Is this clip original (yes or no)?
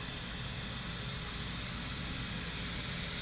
yes